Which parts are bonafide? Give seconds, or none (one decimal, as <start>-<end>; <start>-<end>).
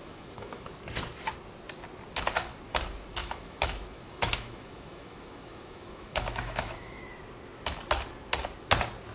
0.8-3.2; 7.0-9.1